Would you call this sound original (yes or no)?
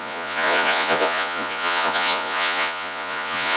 no